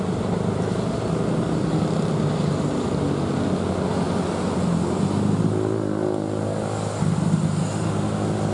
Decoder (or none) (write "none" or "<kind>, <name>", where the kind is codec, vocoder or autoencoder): none